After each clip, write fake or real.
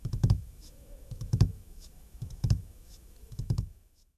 fake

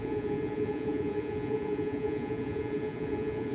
fake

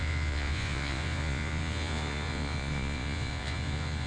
fake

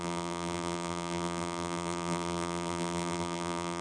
fake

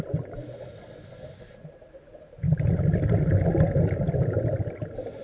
real